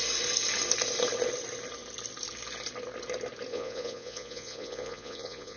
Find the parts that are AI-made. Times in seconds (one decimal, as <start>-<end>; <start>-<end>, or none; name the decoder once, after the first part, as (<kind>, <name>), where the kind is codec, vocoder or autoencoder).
3.5-5.6 (vocoder, Vocos)